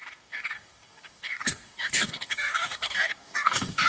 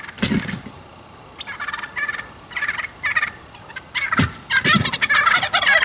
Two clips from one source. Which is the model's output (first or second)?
first